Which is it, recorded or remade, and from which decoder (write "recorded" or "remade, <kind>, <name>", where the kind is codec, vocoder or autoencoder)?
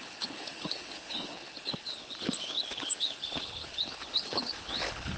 remade, codec, HILCodec